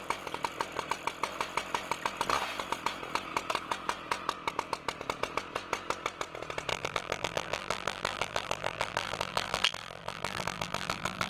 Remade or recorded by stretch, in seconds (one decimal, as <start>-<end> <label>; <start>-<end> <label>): 0.0-6.7 recorded; 6.7-11.3 remade